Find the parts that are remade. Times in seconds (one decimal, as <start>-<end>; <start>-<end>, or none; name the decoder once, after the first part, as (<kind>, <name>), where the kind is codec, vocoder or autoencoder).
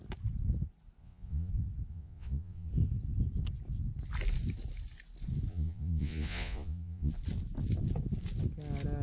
1.0-1.5 (vocoder, Vocos); 1.9-2.7; 5.5-7.1